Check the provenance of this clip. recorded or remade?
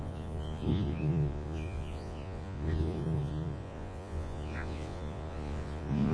remade